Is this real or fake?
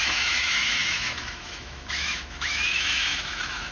fake